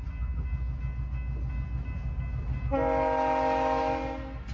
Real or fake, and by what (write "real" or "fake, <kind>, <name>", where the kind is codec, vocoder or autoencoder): real